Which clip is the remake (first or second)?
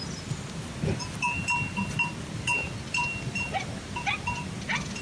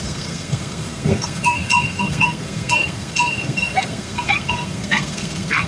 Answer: second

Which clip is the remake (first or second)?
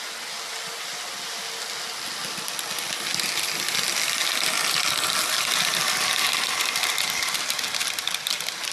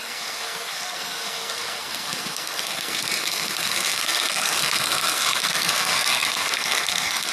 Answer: second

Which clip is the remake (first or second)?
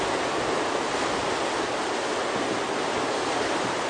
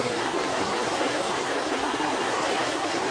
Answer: second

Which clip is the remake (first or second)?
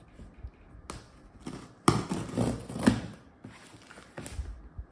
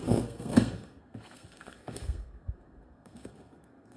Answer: second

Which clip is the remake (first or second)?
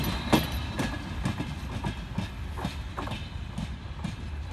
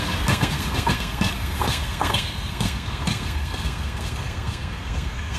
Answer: second